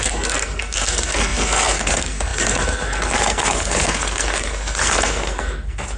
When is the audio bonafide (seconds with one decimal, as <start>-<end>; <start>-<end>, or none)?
none